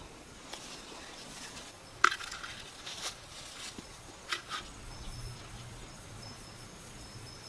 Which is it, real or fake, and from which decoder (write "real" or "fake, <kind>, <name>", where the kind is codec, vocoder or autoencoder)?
fake, vocoder, Vocos